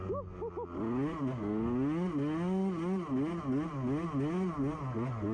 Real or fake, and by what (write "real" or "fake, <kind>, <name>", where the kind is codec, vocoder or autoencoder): real